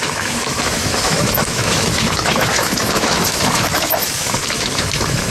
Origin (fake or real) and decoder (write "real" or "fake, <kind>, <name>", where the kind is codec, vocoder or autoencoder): fake, autoencoder, DAC-VAE